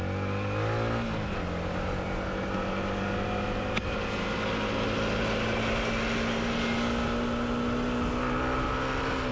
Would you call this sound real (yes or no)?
yes